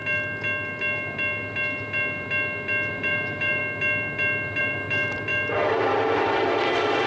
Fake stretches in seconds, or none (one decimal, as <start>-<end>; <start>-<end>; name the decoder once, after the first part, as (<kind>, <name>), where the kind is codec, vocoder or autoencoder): 2.9-3.6 (vocoder, BigVGAN v2); 4.6-7.1